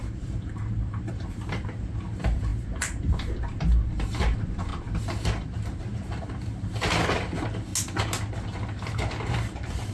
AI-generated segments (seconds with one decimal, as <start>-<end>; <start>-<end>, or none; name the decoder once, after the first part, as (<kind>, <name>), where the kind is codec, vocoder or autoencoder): 0.0-7.7 (vocoder, BigVGAN v2); 9.3-9.9